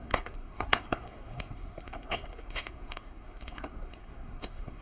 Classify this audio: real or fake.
fake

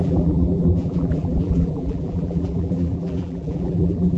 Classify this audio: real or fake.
fake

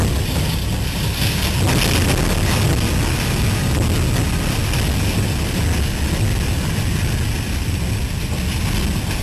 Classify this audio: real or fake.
real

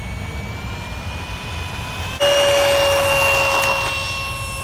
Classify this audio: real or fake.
real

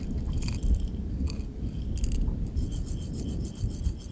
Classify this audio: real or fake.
real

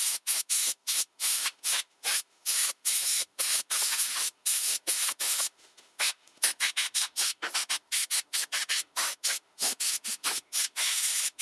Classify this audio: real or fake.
fake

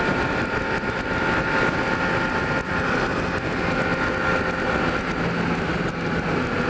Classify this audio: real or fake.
real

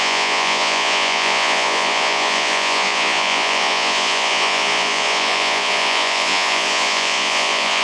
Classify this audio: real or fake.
fake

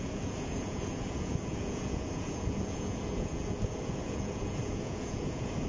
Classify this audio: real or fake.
fake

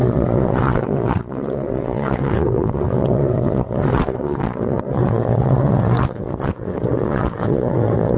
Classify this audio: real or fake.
fake